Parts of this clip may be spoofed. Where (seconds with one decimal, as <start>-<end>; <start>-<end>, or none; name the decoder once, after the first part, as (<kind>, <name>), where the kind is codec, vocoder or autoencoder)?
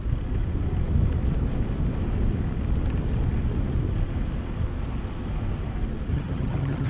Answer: 6.1-6.9 (vocoder, HiFi-GAN)